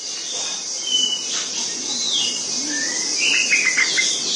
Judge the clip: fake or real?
real